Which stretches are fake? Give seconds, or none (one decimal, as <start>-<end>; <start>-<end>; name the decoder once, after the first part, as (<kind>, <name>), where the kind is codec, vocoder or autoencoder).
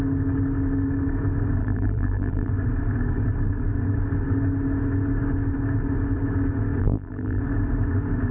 1.6-2.5 (vocoder, BigVGAN v2); 6.8-7.4